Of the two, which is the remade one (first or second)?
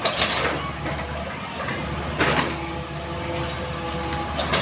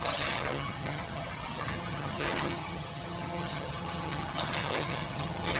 second